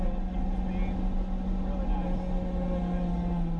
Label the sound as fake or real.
real